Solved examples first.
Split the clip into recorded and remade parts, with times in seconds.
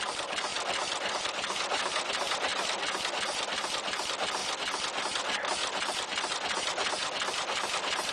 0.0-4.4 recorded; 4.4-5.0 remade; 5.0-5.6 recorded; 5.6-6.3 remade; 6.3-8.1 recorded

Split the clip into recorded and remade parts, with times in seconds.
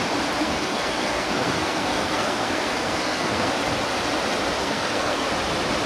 0.0-0.4 recorded; 0.4-3.5 remade; 3.5-4.6 recorded; 4.6-5.3 remade; 5.3-5.9 recorded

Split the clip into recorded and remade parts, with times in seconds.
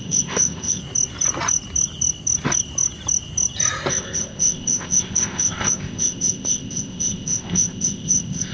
0.0-0.8 remade; 0.8-3.9 recorded; 3.9-8.5 remade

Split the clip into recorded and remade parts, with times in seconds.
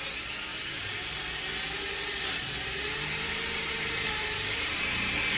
0.0-0.5 recorded; 0.5-1.2 remade; 1.2-2.2 recorded; 2.2-5.4 remade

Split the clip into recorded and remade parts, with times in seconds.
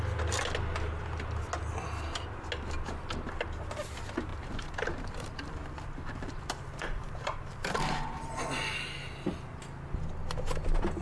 0.0-4.3 recorded; 4.3-8.4 remade; 8.4-11.0 recorded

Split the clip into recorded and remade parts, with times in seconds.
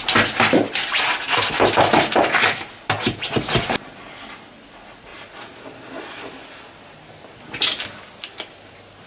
0.0-9.1 recorded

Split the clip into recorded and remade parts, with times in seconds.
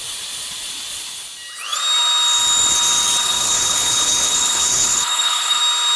0.0-3.2 recorded; 3.2-5.6 remade; 5.6-6.0 recorded